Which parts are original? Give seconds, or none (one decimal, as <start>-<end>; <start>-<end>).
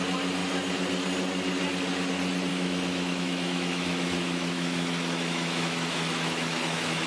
0.0-2.5